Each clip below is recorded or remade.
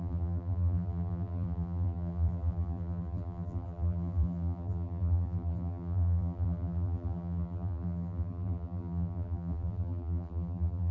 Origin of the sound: remade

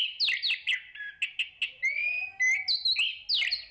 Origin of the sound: recorded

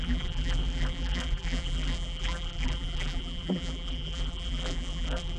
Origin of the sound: remade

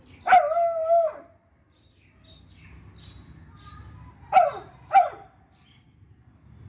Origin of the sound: recorded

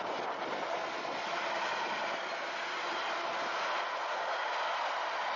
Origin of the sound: recorded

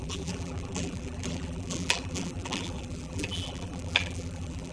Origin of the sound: remade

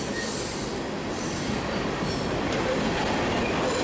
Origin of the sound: recorded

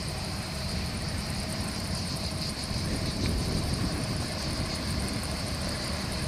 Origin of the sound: remade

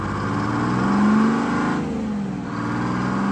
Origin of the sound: recorded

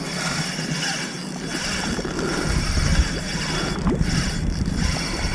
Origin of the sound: remade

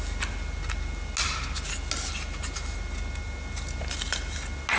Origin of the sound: recorded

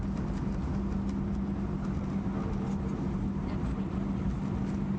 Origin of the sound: recorded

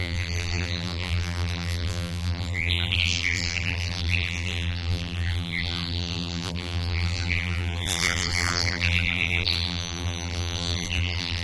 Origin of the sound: remade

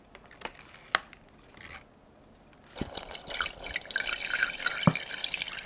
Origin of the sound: recorded